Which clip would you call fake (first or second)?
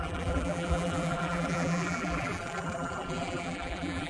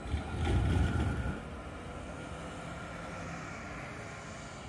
first